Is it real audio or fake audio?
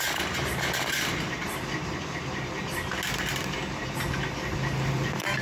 real